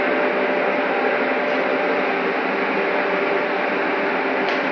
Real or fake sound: real